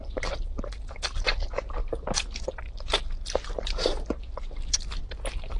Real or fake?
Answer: real